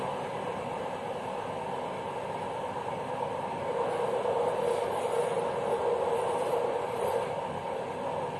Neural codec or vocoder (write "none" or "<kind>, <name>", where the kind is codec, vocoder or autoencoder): none